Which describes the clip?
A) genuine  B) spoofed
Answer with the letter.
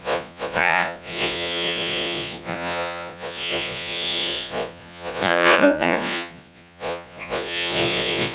B